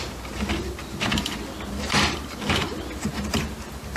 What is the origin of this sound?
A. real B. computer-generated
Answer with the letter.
A